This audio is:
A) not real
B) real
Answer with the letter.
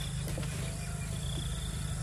B